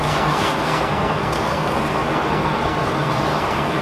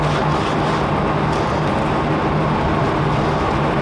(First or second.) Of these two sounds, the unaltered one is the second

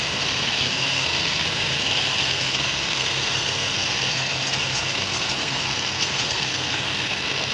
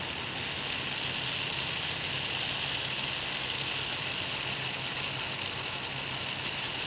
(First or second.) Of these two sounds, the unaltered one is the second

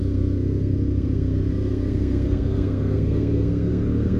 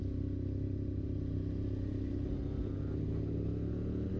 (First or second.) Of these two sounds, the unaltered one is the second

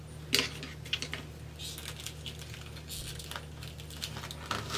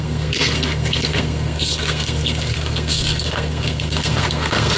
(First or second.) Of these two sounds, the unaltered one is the first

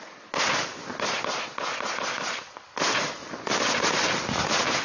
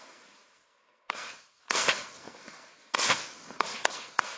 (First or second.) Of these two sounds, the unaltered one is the first